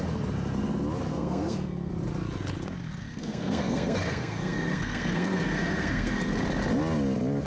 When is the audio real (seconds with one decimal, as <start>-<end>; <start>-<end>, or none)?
0.0-1.1; 1.9-3.0; 6.4-7.5